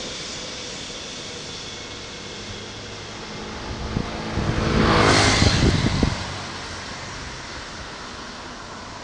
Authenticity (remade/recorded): recorded